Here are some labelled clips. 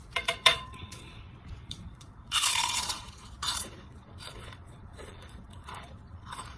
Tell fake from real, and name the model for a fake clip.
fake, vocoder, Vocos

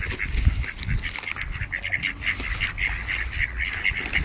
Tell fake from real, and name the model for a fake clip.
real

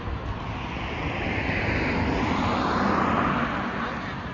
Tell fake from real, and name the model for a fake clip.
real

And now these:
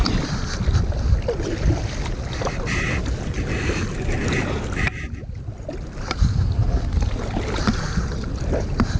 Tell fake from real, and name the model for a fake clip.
real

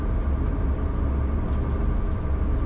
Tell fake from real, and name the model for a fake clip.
real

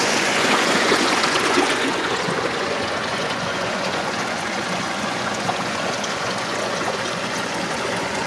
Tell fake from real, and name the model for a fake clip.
fake, vocoder, Vocos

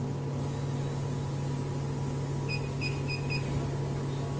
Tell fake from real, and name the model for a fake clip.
real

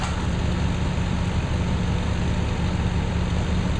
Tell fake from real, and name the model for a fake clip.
real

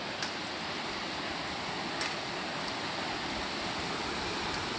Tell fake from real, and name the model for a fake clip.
real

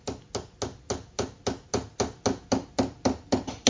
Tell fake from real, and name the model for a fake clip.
real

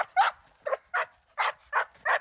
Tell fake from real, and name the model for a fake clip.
real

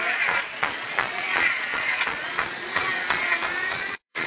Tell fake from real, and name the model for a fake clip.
fake, vocoder, Vocos